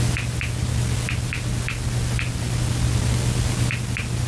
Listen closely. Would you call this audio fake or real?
real